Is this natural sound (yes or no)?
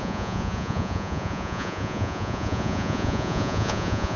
no